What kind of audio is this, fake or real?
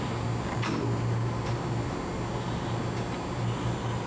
real